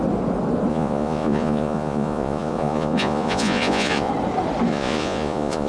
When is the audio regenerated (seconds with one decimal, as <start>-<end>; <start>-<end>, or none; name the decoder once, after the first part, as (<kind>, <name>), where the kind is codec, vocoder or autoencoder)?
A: 0.7-4.1 (vocoder, Vocos); 4.7-5.7